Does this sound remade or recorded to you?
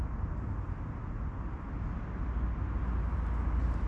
recorded